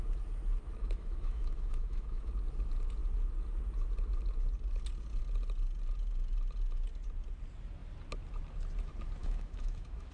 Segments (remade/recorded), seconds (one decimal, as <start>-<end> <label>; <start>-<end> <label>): 0.0-0.8 recorded; 0.8-2.3 remade; 2.3-9.2 recorded; 9.2-10.1 remade